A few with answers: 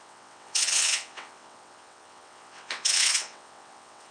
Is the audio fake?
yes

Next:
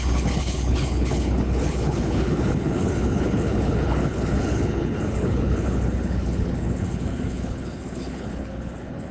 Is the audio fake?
yes